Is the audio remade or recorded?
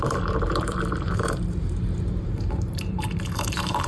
remade